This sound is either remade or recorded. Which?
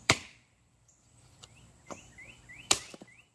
remade